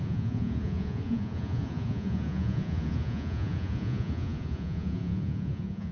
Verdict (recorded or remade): remade